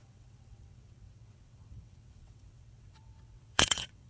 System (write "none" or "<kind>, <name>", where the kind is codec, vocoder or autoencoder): vocoder, WaveNeXt